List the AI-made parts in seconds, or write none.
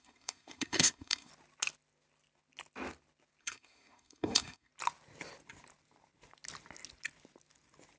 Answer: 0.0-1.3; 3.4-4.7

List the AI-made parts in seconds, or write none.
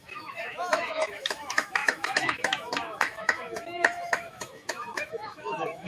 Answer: 0.0-5.9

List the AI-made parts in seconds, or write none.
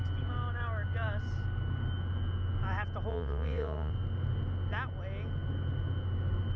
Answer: 3.1-3.9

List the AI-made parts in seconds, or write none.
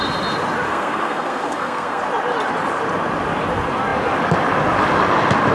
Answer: 0.7-2.0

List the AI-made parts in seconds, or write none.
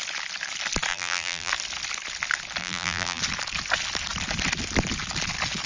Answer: 0.9-1.5; 2.6-3.2